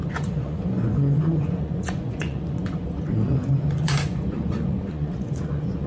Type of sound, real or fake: fake